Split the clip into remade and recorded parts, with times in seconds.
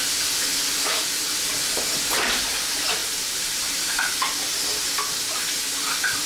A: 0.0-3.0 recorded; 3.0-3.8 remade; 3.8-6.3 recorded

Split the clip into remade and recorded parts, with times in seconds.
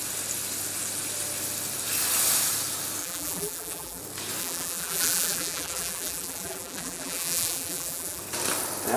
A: 0.0-3.0 recorded; 3.0-4.0 remade; 4.0-4.4 recorded; 4.4-8.2 remade; 8.2-9.0 recorded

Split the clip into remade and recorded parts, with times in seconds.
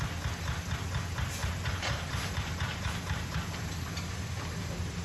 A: 0.0-1.4 recorded; 1.4-3.4 remade; 3.4-5.0 recorded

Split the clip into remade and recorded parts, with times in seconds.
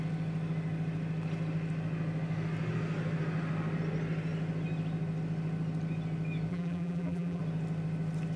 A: 0.0-6.5 recorded; 6.5-7.4 remade; 7.4-8.4 recorded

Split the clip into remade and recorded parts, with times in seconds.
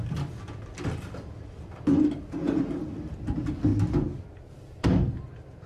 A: 0.0-3.7 remade; 3.7-4.5 recorded; 4.5-5.7 remade